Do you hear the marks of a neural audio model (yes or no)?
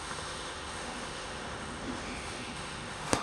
yes